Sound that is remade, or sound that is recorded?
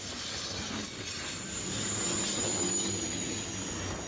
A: recorded